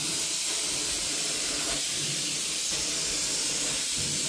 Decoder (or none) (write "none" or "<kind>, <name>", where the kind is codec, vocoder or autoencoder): vocoder, BigVGAN v2